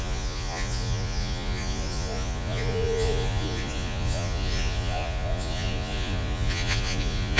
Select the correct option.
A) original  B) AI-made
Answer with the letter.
B